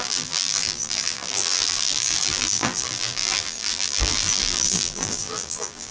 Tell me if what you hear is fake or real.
fake